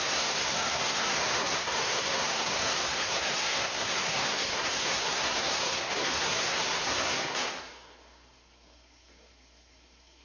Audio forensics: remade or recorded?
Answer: remade